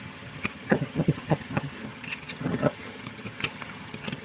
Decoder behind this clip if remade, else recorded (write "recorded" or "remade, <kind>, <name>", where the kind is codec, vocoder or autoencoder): remade, vocoder, HiFi-GAN